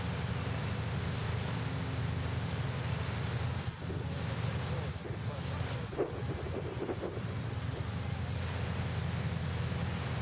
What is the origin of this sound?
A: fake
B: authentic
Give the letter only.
B